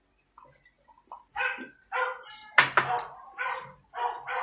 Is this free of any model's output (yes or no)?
yes